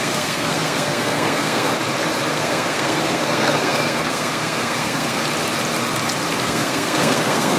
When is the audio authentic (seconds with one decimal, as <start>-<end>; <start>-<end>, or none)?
1.7-2.3; 5.2-6.4